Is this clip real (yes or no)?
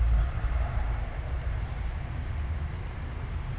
no